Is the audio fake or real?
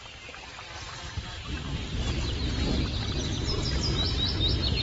real